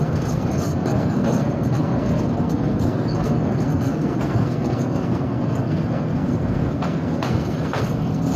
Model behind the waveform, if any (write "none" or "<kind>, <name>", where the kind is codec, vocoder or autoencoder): codec, SNAC